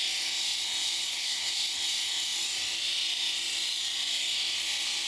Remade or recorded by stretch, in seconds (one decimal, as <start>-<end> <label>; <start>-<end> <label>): 0.0-1.0 recorded; 1.0-1.5 remade; 1.5-5.1 recorded

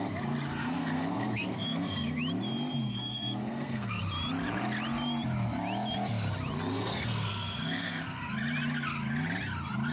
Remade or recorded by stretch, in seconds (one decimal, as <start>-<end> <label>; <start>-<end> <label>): 0.0-0.6 recorded; 0.6-2.2 remade; 2.2-2.9 recorded; 2.9-4.0 remade; 4.0-6.7 recorded; 6.7-8.2 remade; 8.2-9.9 recorded

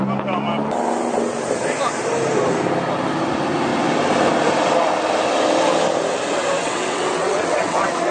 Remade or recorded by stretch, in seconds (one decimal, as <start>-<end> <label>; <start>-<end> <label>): 0.0-6.6 recorded; 6.6-8.1 remade

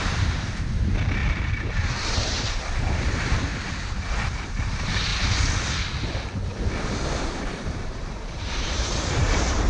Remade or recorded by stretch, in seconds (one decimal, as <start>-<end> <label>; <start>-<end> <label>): 0.0-3.5 remade; 3.5-4.2 recorded; 4.2-5.1 remade; 5.1-7.2 recorded; 7.2-9.7 remade

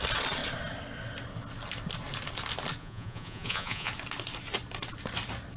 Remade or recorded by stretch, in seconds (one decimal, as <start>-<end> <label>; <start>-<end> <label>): 0.0-2.8 recorded; 2.8-3.9 remade; 3.9-5.6 recorded